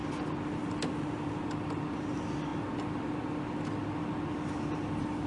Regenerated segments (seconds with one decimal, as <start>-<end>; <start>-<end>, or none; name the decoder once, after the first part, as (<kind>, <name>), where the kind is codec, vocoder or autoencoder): none